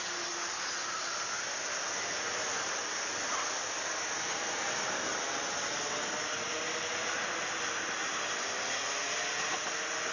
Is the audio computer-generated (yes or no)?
no